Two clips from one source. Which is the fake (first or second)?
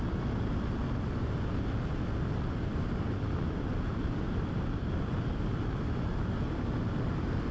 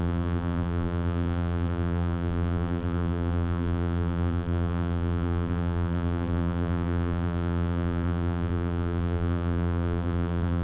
second